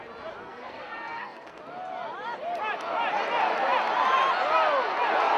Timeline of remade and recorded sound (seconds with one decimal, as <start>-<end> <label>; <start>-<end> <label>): 0.0-0.4 recorded; 0.4-1.6 remade; 1.6-5.4 recorded